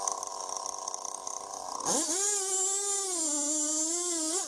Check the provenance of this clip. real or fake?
real